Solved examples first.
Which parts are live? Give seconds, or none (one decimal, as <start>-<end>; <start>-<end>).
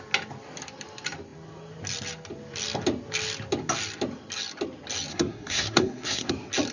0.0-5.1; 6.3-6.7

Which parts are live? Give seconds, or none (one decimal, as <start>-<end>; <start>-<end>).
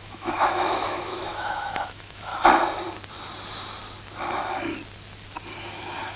2.3-6.2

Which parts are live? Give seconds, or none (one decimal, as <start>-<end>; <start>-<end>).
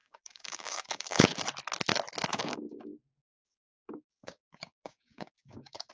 1.4-2.3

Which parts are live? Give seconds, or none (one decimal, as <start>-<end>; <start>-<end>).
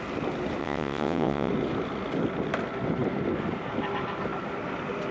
0.0-0.6; 1.5-5.1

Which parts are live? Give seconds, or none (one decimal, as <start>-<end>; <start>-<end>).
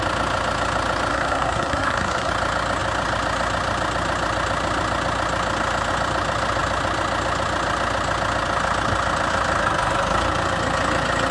0.0-1.1; 2.3-11.3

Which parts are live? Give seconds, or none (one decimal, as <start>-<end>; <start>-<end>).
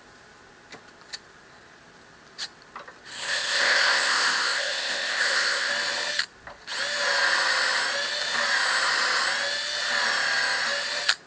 0.0-3.1; 5.7-11.3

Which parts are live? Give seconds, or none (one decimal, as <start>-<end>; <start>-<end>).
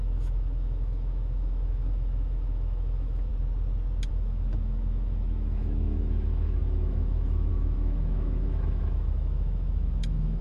3.3-4.1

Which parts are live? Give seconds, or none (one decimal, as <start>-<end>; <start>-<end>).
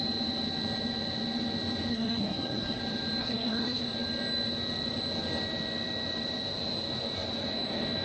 0.0-1.9; 2.8-3.2; 3.8-8.0